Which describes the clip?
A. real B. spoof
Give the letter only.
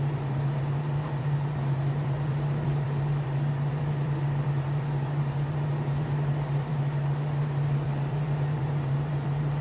B